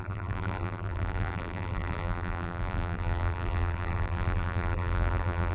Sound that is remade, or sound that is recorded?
remade